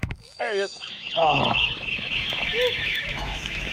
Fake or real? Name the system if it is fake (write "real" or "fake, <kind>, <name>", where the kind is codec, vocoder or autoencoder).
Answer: fake, autoencoder, DAC-VAE